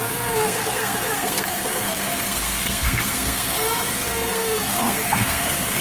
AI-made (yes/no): yes